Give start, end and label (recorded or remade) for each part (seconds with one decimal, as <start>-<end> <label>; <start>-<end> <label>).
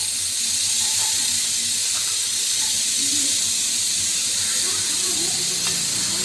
0.0-1.8 recorded; 1.8-5.5 remade; 5.5-6.2 recorded